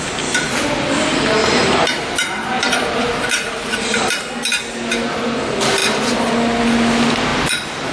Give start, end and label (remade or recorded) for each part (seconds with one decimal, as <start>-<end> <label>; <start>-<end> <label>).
0.0-1.4 recorded; 1.4-4.3 remade; 4.3-7.9 recorded

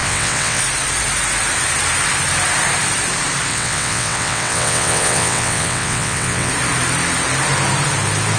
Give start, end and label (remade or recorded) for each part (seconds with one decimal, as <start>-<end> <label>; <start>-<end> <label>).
0.0-0.6 remade; 0.6-3.5 recorded; 3.5-6.5 remade; 6.5-8.4 recorded

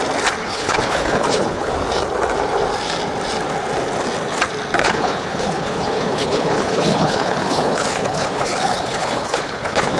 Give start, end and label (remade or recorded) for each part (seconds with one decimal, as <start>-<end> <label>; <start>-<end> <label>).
0.0-0.4 recorded; 0.4-1.7 remade; 1.7-4.8 recorded; 4.8-10.0 remade

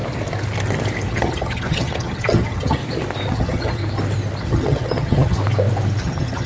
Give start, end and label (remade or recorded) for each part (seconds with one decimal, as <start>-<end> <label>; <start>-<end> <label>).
0.0-1.1 recorded; 1.1-2.8 remade; 2.8-3.3 recorded; 3.3-3.8 remade; 3.8-4.4 recorded; 4.4-5.4 remade; 5.4-6.0 recorded; 6.0-6.5 remade

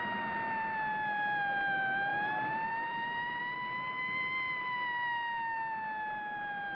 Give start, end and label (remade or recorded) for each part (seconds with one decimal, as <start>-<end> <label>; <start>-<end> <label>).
0.0-2.1 recorded; 2.1-3.4 remade; 3.4-6.7 recorded

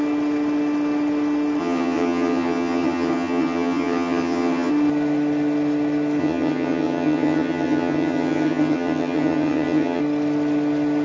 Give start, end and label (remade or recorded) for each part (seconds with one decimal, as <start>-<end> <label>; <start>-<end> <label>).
0.0-1.6 recorded; 1.6-4.7 remade; 4.7-6.2 recorded; 6.2-10.0 remade; 10.0-11.0 recorded

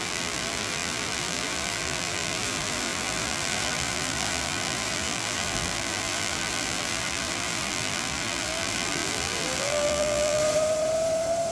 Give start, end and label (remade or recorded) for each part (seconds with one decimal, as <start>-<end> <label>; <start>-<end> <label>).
0.0-10.4 remade; 10.4-11.5 recorded